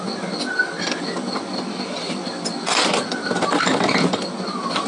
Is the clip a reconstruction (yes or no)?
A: no